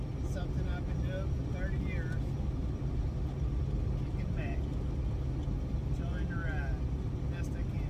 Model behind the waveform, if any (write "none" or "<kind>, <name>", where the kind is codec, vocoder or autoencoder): none